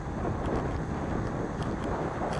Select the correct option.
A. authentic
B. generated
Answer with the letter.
A